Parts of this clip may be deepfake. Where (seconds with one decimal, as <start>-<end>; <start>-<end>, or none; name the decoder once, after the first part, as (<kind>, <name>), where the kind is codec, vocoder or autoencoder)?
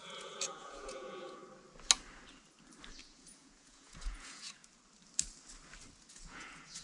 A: 0.0-1.4 (vocoder, Vocos); 3.0-4.6; 6.1-6.8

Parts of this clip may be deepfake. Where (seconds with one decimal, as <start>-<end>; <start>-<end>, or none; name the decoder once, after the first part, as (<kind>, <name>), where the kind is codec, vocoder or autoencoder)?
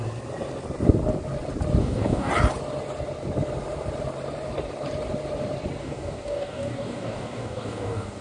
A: 1.8-2.3 (codec, DAC); 5.8-8.2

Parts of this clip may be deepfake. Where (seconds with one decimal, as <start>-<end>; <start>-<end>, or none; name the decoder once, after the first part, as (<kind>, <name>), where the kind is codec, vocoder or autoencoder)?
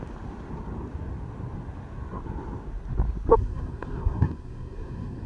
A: 3.3-5.3 (codec, SNAC)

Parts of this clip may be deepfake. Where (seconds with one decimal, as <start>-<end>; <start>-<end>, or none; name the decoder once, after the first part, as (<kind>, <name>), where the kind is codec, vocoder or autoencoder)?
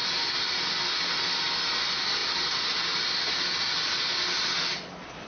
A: 2.2-2.8 (vocoder, BigVGAN v2)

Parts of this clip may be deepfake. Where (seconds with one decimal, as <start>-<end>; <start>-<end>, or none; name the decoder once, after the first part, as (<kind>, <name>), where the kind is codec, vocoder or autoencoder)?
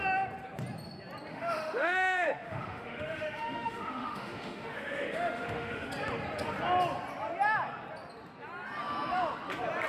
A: 1.3-5.9 (autoencoder, DAC-VAE)